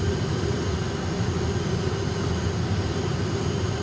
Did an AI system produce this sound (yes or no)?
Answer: no